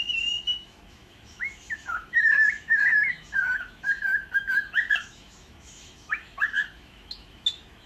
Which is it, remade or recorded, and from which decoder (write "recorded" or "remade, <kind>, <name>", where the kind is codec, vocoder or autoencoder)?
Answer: remade, autoencoder, DAC-VAE